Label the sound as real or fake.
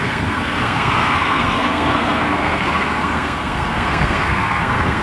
fake